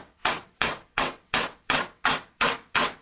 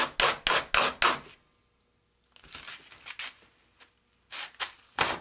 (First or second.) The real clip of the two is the second